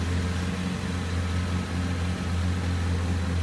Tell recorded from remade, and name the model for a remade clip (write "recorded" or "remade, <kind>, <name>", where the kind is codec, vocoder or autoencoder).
recorded